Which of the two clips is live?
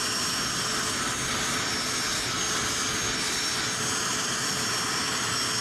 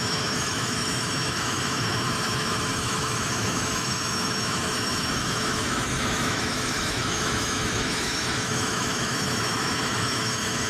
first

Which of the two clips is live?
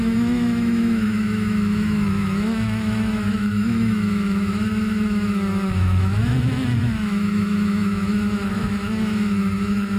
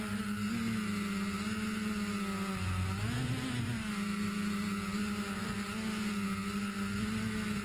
second